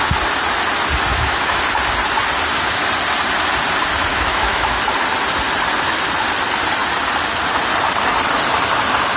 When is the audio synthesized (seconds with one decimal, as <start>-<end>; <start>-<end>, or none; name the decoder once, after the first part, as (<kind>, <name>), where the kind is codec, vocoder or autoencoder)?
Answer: 1.1-1.6 (autoencoder, DAC-VAE); 4.1-4.7